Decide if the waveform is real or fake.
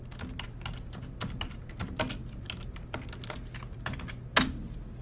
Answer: real